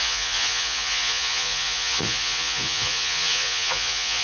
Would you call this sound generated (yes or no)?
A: yes